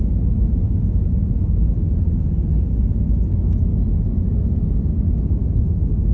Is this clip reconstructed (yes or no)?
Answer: no